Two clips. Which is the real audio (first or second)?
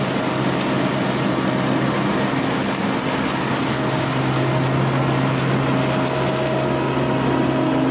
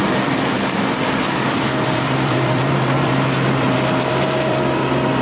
first